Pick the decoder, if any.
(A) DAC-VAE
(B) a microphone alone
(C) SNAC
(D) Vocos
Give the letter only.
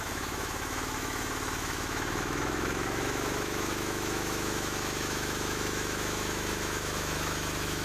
A